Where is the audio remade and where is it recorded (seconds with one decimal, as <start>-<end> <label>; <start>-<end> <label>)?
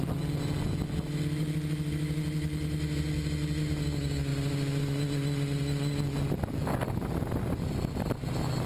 0.0-4.3 recorded; 4.3-4.8 remade; 4.8-8.7 recorded